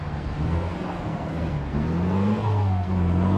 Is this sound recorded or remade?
remade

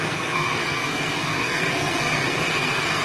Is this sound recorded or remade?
remade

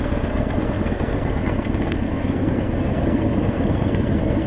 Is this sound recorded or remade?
remade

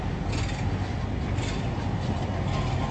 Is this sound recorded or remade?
recorded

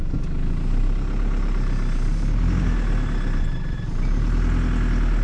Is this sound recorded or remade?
recorded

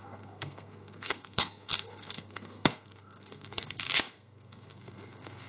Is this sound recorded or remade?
remade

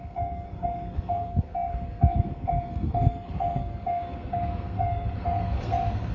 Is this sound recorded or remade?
remade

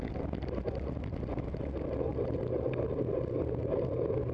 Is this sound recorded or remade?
recorded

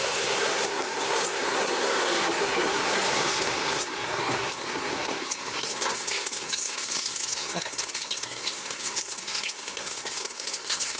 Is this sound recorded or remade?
remade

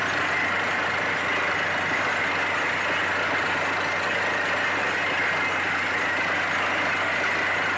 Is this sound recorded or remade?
recorded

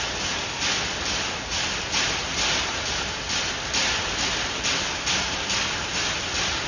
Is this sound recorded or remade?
recorded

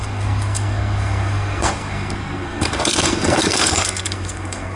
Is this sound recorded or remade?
remade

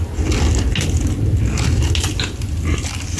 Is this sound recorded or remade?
recorded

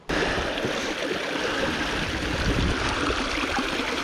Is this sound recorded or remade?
recorded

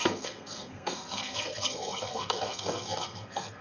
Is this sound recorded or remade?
remade